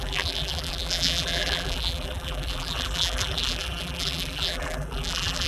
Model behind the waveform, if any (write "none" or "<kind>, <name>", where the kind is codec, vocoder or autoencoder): vocoder, BigVGAN v2